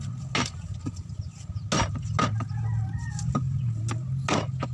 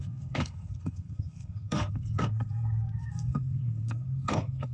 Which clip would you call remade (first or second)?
second